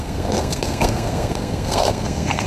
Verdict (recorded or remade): remade